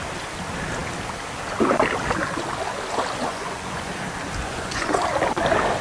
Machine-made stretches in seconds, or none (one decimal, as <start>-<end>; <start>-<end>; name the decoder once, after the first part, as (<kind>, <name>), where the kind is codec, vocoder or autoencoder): 3.2-3.9 (vocoder, Vocos); 4.4-5.0